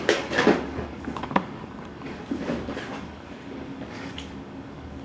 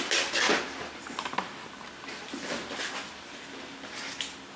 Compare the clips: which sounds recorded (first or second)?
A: second